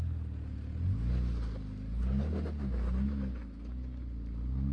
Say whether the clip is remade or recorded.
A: recorded